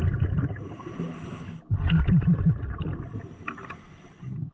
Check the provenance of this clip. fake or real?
real